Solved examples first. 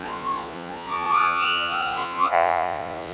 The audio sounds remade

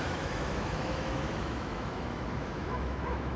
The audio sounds remade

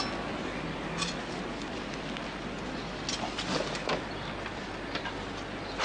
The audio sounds recorded